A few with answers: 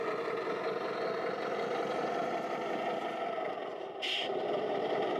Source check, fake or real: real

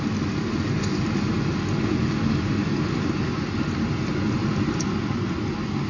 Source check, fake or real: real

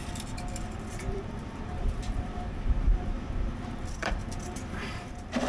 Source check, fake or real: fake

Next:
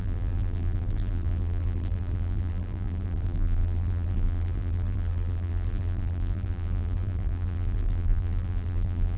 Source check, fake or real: fake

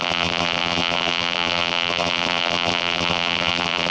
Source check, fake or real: fake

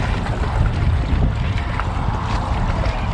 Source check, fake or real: real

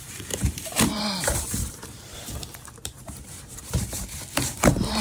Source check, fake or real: fake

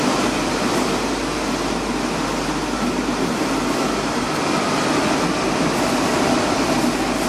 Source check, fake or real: real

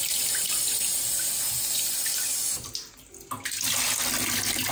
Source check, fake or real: real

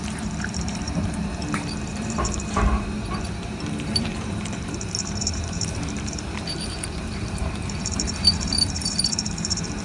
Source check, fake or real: fake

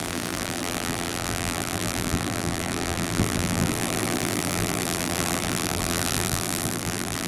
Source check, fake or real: fake